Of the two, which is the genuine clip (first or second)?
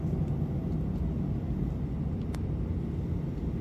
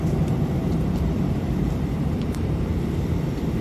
first